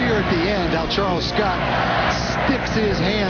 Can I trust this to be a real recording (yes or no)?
yes